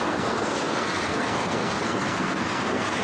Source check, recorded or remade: remade